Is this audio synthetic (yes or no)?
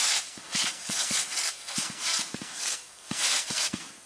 yes